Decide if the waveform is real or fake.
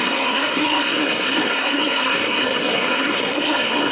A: fake